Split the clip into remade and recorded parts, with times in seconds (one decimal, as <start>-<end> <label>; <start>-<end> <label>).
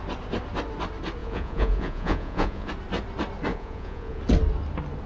0.0-1.2 recorded; 1.2-2.7 remade; 2.7-3.5 recorded; 3.5-4.2 remade; 4.2-5.1 recorded